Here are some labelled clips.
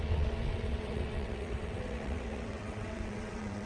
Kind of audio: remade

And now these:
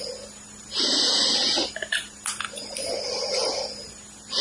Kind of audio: recorded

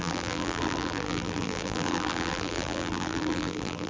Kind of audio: remade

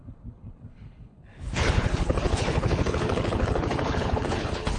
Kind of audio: remade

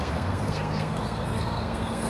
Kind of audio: remade